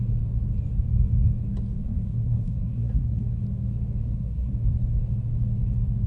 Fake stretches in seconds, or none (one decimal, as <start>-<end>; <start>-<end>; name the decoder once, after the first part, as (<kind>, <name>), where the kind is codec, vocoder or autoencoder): 1.8-3.4 (codec, SNAC); 4.0-4.5